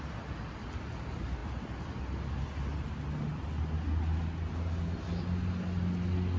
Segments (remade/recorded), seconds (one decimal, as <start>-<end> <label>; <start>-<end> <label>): 0.0-6.4 recorded